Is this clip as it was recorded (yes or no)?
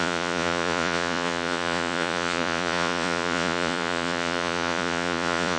no